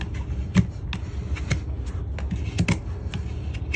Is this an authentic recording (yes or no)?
yes